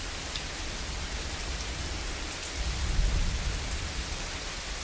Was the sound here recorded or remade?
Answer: recorded